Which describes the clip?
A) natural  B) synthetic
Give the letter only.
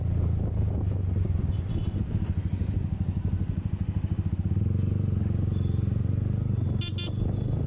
A